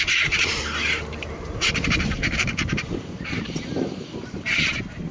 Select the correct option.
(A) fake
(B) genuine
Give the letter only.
A